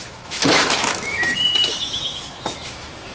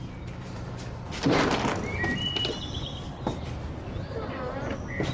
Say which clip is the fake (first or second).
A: first